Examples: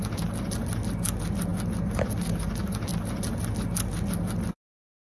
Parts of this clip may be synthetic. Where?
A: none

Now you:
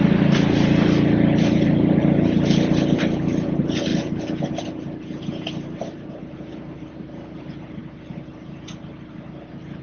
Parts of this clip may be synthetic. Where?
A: none